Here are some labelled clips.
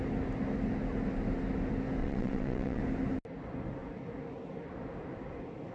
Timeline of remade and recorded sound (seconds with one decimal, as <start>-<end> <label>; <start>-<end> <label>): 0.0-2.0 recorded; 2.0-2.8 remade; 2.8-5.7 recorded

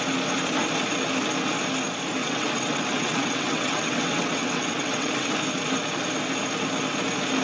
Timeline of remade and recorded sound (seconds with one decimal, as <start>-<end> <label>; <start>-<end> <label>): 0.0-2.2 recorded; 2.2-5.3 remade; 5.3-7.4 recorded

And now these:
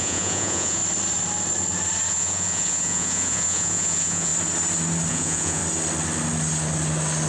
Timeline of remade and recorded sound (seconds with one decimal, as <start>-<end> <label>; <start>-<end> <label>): 0.0-0.8 remade; 0.8-2.1 recorded; 2.1-4.3 remade; 4.3-5.1 recorded; 5.1-5.6 remade; 5.6-7.3 recorded

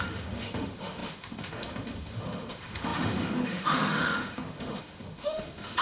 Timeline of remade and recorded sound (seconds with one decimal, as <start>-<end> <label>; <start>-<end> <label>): 0.0-5.8 remade

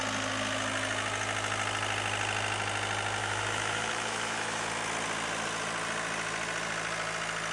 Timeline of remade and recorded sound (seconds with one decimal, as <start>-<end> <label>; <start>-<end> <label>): 0.0-3.2 recorded; 3.2-4.7 remade; 4.7-7.5 recorded